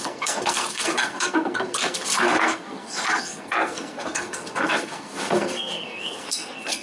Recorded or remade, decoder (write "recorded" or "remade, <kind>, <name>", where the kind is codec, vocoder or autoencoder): remade, codec, SNAC